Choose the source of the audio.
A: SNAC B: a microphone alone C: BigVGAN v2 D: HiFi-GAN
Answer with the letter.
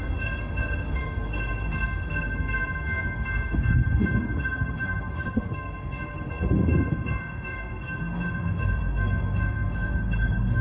A